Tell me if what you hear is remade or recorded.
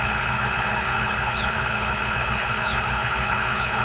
remade